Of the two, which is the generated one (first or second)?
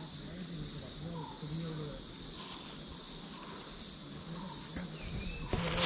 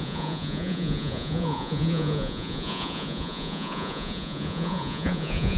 second